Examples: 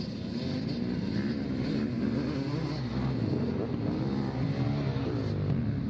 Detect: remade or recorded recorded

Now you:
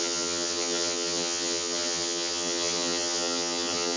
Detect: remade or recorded remade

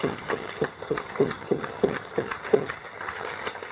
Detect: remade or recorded remade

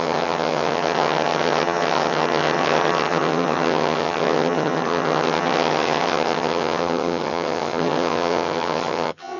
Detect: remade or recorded remade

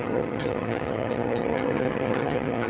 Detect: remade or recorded remade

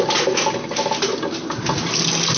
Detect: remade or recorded recorded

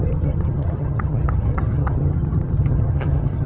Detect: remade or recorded remade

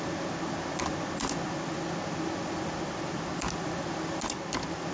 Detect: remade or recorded recorded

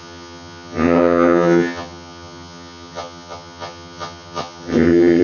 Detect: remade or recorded remade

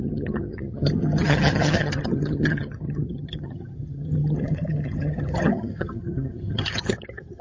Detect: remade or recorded remade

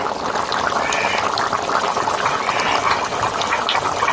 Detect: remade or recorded recorded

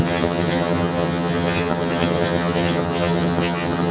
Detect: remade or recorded remade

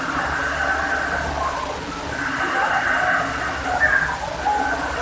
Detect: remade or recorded recorded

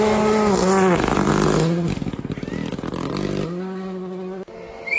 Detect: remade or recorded recorded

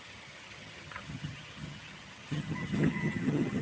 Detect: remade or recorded remade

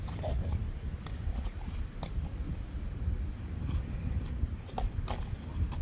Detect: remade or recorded recorded